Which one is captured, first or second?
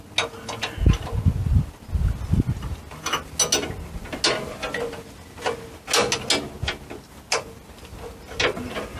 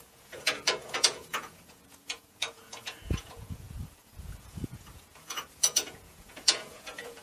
first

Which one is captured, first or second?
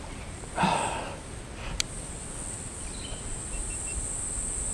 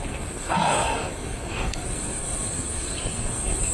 first